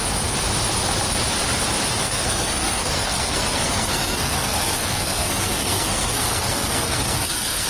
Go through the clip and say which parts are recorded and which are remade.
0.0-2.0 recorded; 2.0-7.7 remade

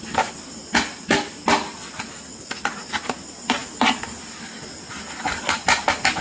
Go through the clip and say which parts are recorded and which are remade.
0.0-6.2 recorded

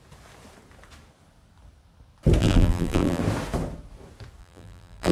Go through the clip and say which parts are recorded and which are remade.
0.0-2.4 recorded; 2.4-3.2 remade; 3.2-4.4 recorded; 4.4-5.1 remade

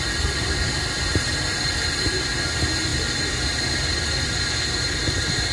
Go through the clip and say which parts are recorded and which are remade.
0.0-5.5 recorded

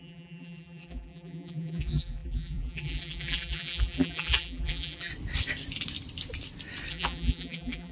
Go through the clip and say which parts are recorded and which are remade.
0.0-5.1 remade; 5.1-6.9 recorded; 6.9-7.9 remade

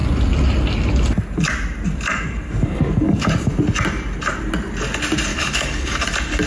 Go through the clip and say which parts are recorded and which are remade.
0.0-2.1 recorded; 2.1-3.3 remade; 3.3-5.3 recorded; 5.3-6.0 remade; 6.0-6.5 recorded